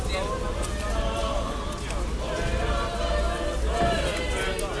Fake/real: real